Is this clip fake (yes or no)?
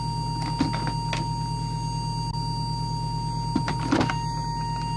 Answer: no